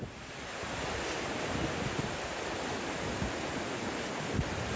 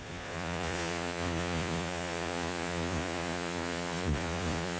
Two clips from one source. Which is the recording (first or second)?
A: first